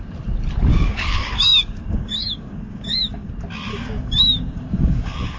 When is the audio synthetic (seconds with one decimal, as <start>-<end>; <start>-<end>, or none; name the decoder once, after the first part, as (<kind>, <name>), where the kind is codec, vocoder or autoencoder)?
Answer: 0.7-3.3 (codec, DAC); 3.7-5.4